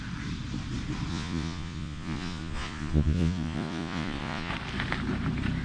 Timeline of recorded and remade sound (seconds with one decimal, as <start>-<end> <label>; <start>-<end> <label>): 0.0-1.1 recorded; 1.1-4.5 remade; 4.5-5.6 recorded